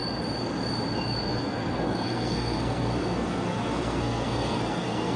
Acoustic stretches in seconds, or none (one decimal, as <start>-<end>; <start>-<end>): 0.0-1.3